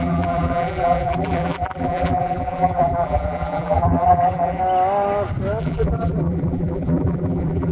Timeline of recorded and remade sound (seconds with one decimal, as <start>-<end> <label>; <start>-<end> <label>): 0.0-4.6 remade; 4.6-5.6 recorded; 5.6-7.7 remade